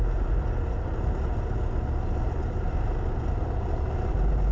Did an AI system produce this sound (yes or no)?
no